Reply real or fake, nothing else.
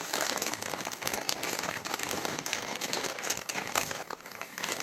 fake